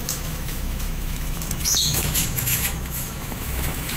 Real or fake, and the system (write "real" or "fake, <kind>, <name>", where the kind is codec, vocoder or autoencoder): fake, autoencoder, DAC-VAE